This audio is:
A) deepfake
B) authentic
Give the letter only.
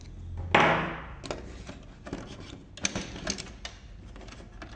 B